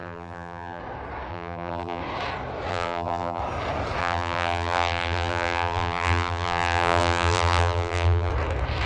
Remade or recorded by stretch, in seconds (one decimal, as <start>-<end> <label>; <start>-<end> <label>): 0.0-0.8 remade; 0.8-1.3 recorded; 1.3-2.0 remade; 2.0-2.7 recorded; 2.7-3.4 remade; 3.4-4.0 recorded; 4.0-8.3 remade; 8.3-8.9 recorded